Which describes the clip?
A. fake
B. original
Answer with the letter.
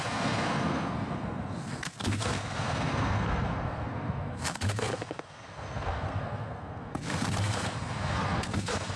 A